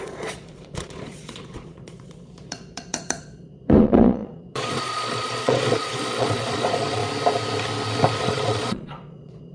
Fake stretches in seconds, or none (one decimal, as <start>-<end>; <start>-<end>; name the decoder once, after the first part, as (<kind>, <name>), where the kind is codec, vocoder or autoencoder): 0.0-7.0 (vocoder, Vocos); 8.2-9.5